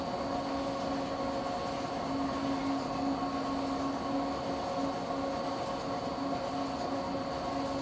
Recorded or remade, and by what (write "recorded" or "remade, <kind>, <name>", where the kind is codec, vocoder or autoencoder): recorded